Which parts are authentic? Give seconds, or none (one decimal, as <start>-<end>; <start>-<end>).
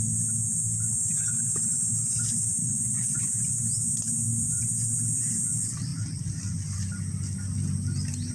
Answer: 0.0-2.6; 3.2-8.3